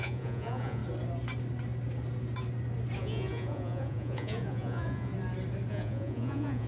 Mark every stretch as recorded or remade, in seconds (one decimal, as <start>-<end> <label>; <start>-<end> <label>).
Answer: 0.0-0.8 remade; 0.8-3.0 recorded; 3.0-5.1 remade; 5.1-5.7 recorded; 5.7-6.7 remade